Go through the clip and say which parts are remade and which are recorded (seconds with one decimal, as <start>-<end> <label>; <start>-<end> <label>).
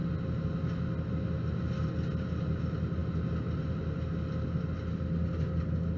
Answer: 0.0-6.0 recorded